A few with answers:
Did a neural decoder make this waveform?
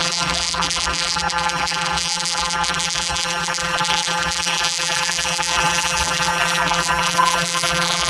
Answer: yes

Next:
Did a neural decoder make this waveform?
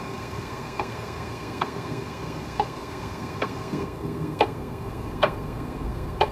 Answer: yes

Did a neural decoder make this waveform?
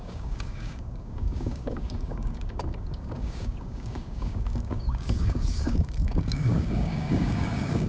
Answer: yes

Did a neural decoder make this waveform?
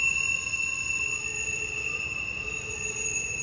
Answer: no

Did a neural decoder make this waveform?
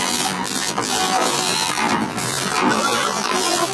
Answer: yes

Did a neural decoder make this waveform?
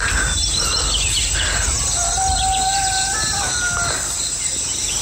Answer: no